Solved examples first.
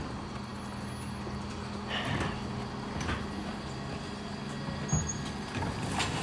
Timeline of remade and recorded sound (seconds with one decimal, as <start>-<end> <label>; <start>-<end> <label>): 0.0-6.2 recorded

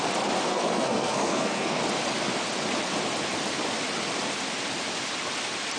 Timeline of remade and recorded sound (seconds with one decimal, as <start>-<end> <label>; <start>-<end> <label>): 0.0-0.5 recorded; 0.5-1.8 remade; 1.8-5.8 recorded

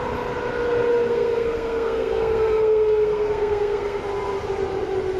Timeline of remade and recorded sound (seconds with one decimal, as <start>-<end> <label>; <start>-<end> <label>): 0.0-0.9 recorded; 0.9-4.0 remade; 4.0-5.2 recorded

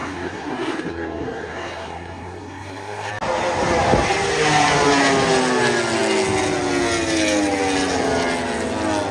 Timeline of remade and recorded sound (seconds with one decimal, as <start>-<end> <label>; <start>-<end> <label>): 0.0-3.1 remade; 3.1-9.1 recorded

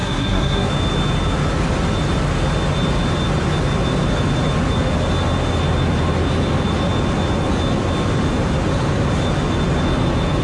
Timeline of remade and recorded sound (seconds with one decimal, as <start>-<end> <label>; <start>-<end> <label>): 0.0-0.7 remade; 0.7-10.4 recorded

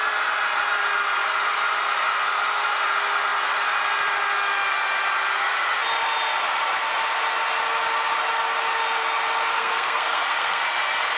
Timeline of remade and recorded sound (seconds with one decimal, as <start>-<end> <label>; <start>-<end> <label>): 0.0-9.5 recorded; 9.5-10.6 remade; 10.6-11.2 recorded

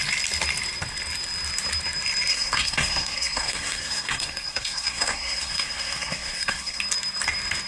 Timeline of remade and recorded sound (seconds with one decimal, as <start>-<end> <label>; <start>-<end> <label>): 0.0-2.3 recorded; 2.3-6.8 remade; 6.8-7.7 recorded